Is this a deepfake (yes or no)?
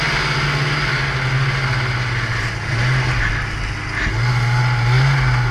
no